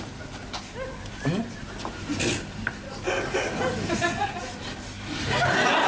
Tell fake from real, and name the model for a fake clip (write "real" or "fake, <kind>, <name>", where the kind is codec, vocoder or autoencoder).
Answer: real